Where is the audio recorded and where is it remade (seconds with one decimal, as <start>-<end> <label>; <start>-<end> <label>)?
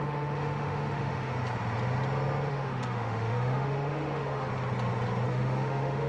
0.0-1.3 remade; 1.3-2.5 recorded; 2.5-4.5 remade; 4.5-5.3 recorded; 5.3-6.1 remade